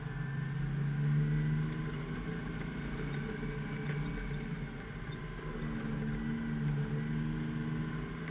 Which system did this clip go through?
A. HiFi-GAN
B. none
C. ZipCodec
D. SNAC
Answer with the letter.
B